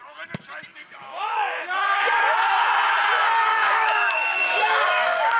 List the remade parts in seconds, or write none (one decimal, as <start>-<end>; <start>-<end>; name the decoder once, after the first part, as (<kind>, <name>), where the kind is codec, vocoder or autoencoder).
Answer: 0.7-2.2 (codec, DAC); 3.5-5.4